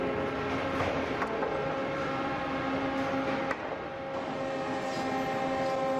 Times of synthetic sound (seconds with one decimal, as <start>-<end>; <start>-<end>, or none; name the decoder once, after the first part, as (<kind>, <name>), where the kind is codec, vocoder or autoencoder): 1.8-2.4 (vocoder, BigVGAN v2)